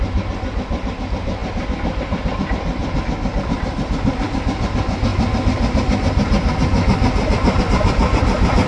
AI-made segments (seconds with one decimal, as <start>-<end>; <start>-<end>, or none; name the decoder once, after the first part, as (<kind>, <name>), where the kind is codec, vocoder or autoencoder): none